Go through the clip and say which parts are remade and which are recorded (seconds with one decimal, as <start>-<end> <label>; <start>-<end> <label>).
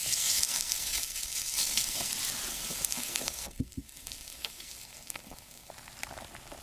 0.0-2.1 remade; 2.1-2.5 recorded; 2.5-5.7 remade; 5.7-6.6 recorded